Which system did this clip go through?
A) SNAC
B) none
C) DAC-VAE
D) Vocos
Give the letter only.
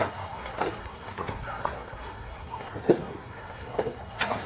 A